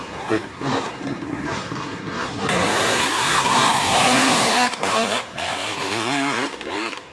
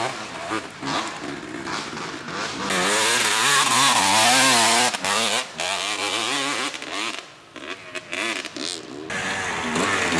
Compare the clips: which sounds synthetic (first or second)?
first